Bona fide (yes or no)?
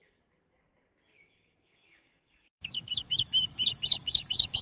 no